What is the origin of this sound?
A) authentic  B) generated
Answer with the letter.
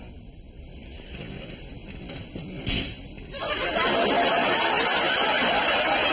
A